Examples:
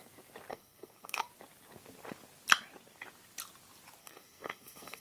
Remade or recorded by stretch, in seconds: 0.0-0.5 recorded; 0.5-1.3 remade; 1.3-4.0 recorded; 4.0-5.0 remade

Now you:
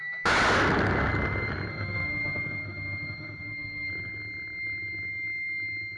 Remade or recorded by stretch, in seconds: 0.0-1.7 recorded; 1.7-3.9 remade; 3.9-6.0 recorded

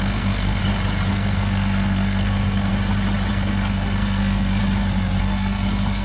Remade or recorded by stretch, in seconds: 0.0-0.6 remade; 0.6-1.1 recorded; 1.1-2.7 remade; 2.7-3.3 recorded; 3.3-4.6 remade; 4.6-5.2 recorded; 5.2-6.0 remade

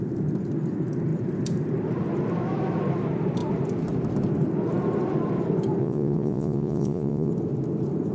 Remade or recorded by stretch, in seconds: 0.0-5.8 recorded; 5.8-7.3 remade; 7.3-8.1 recorded

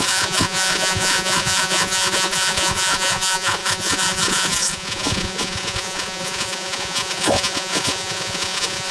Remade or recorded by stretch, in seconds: 0.0-8.9 remade

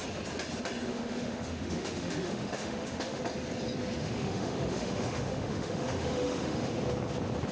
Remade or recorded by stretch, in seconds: 0.0-0.9 recorded; 0.9-3.2 remade; 3.2-4.0 recorded; 4.0-6.7 remade; 6.7-7.5 recorded